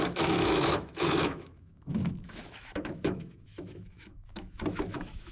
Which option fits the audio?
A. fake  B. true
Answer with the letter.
A